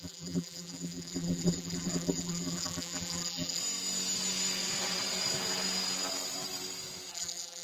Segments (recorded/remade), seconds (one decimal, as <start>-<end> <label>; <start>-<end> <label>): 0.0-3.6 remade; 3.6-7.1 recorded; 7.1-7.6 remade